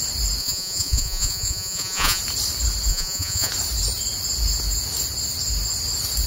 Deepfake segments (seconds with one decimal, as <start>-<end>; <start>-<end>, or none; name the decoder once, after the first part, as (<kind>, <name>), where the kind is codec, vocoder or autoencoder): 0.4-2.2 (vocoder, Vocos); 2.9-3.5